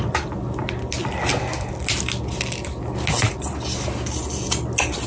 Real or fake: real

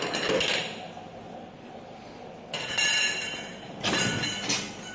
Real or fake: real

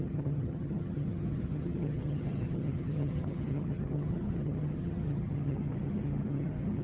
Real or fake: fake